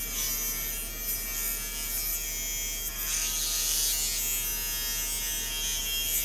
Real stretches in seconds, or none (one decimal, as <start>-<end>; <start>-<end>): 0.0-6.2